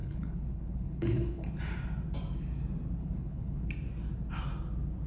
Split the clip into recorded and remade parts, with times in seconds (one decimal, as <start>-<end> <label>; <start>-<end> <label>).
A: 0.0-1.6 remade; 1.6-3.0 recorded; 3.0-3.7 remade; 3.7-5.1 recorded